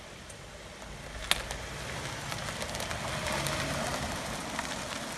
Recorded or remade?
recorded